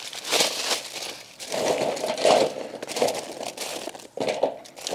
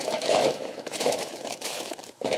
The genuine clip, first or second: first